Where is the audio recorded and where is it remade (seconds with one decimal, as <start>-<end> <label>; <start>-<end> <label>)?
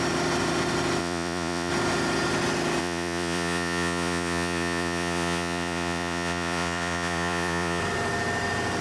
0.0-1.0 recorded; 1.0-1.7 remade; 1.7-2.8 recorded; 2.8-7.8 remade; 7.8-8.8 recorded